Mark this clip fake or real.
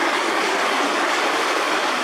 fake